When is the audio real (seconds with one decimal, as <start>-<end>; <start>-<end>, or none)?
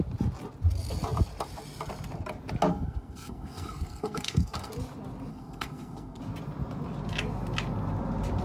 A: 0.0-2.7; 4.7-5.3; 6.2-8.4